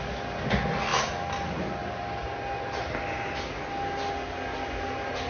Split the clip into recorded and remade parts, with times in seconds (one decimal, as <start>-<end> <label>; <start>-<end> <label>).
0.0-5.3 recorded